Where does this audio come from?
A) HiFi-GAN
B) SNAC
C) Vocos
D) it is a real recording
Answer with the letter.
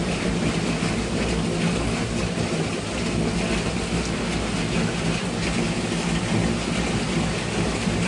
D